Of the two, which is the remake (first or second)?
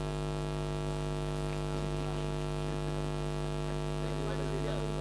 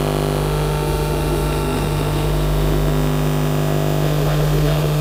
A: second